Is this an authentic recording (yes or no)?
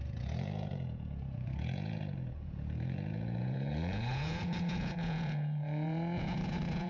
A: no